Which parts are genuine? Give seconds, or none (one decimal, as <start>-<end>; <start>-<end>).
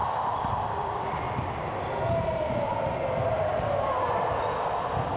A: 0.0-5.2